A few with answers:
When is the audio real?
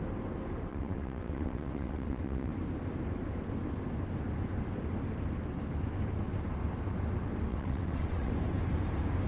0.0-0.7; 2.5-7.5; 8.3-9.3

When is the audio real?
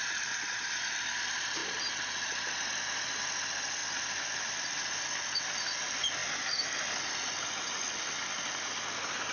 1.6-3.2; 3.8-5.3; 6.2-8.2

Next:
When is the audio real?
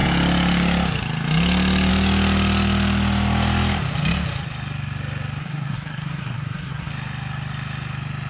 0.0-5.4; 6.9-8.3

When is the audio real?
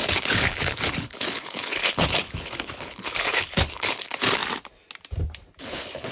4.4-5.6